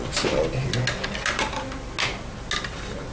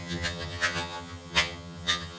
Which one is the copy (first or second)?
second